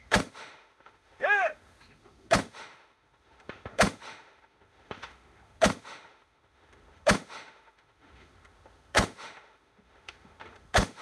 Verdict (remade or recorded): remade